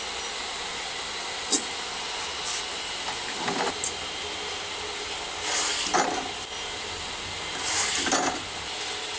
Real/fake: real